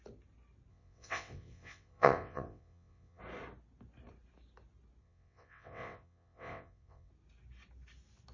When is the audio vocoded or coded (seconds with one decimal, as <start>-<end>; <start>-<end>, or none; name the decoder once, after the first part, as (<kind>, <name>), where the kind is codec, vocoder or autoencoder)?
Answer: 0.7-3.2 (vocoder, WaveNeXt); 5.0-7.1